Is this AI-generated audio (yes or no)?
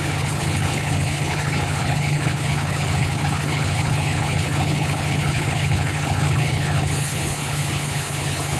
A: yes